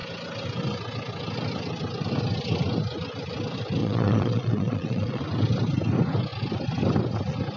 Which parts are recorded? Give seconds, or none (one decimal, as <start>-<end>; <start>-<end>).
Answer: 0.0-3.8; 5.2-7.6